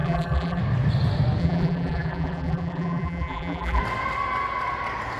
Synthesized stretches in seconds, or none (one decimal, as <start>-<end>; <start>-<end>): 0.0-0.6; 1.4-3.8